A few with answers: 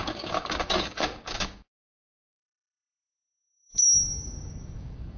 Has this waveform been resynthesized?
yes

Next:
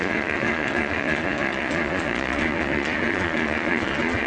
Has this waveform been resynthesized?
yes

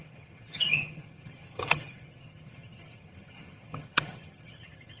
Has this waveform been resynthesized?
yes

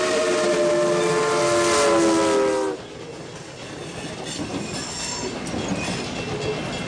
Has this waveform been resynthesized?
no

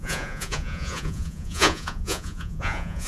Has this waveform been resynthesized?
yes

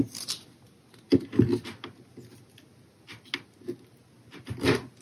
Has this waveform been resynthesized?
no